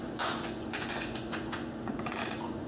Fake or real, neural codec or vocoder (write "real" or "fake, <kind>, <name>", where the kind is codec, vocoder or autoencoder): fake, vocoder, Vocos